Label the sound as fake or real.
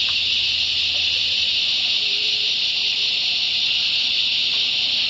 fake